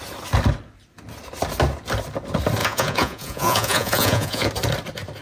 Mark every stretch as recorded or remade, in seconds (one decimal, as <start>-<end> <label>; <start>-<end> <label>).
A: 0.0-2.6 recorded; 2.6-4.5 remade; 4.5-5.2 recorded